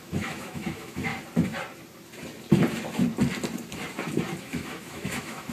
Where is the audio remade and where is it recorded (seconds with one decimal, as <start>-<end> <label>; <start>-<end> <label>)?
0.0-1.1 remade; 1.1-4.4 recorded; 4.4-5.5 remade